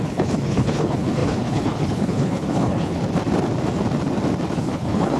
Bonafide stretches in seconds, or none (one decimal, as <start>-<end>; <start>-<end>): 3.0-4.6